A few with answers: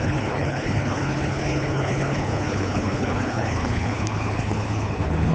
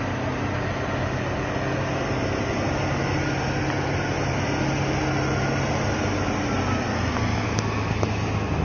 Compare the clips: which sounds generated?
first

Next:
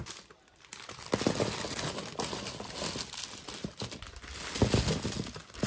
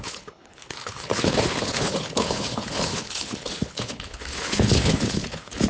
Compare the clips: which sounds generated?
second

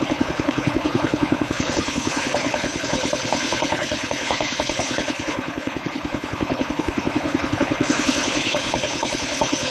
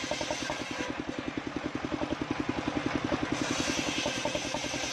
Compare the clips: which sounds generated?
first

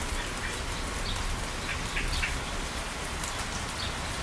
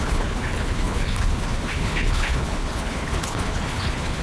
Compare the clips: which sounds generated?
second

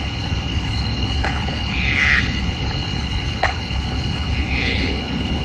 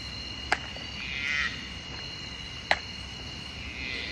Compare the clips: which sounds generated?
first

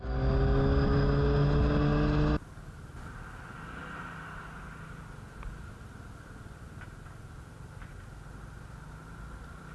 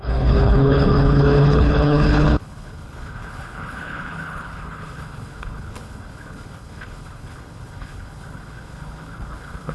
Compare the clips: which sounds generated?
second